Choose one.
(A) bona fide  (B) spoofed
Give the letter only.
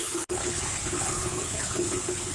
B